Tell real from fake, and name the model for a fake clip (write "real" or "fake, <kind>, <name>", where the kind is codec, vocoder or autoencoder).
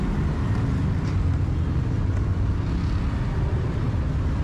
real